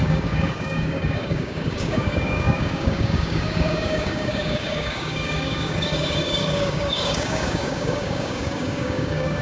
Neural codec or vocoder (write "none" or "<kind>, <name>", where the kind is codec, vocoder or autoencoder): codec, DAC